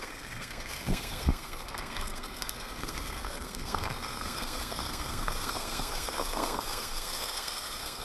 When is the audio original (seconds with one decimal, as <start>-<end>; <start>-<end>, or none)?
none